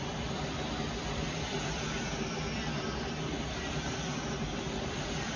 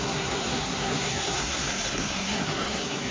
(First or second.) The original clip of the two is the first